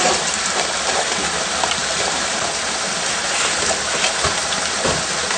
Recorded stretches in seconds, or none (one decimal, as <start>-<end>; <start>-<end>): 0.0-5.4